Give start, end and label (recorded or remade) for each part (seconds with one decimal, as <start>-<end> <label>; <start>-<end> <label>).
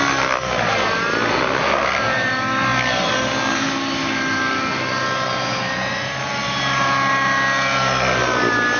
0.0-8.8 recorded